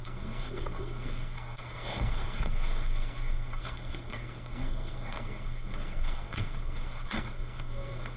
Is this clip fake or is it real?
fake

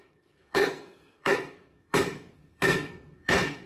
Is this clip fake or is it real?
fake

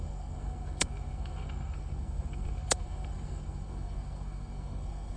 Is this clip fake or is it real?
fake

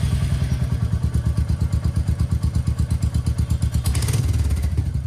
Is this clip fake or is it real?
real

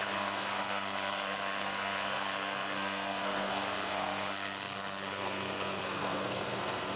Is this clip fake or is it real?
fake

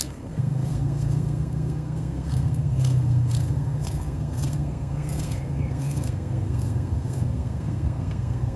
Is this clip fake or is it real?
fake